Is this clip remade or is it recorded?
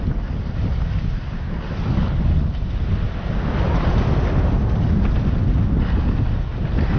recorded